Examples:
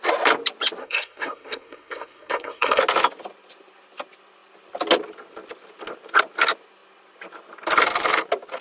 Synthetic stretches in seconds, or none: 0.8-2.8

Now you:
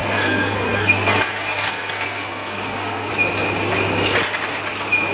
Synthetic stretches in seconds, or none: 0.0-3.1

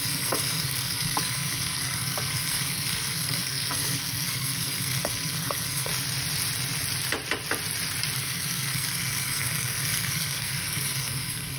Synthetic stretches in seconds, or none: 0.0-5.9; 8.2-11.6

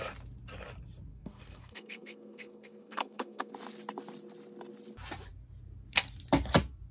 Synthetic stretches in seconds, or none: 1.1-3.5

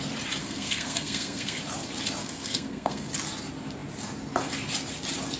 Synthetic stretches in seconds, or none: 0.4-1.6; 2.2-3.1

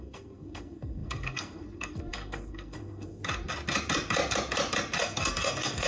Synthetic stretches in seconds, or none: 0.0-3.2; 5.0-5.9

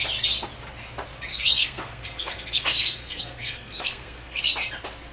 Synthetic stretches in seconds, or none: 1.3-4.4